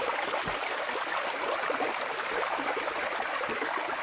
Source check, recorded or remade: recorded